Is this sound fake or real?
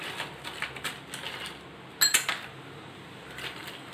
real